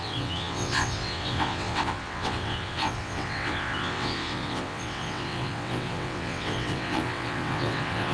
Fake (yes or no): yes